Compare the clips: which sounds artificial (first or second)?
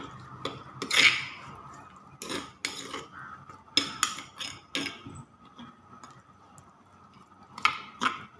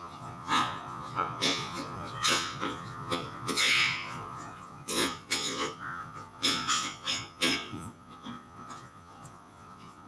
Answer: second